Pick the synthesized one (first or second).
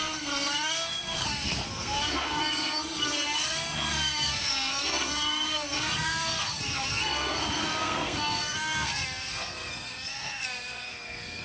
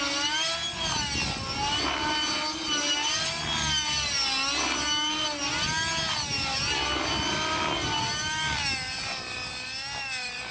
first